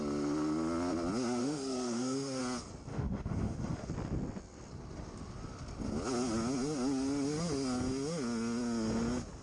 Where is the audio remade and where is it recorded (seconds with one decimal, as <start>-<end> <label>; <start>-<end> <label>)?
0.0-1.4 recorded; 1.4-2.4 remade; 2.4-2.9 recorded; 2.9-3.9 remade; 3.9-9.4 recorded